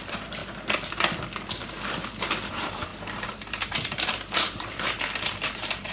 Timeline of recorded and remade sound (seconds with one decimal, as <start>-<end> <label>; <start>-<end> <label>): 0.0-0.4 remade; 0.4-2.5 recorded; 2.5-5.9 remade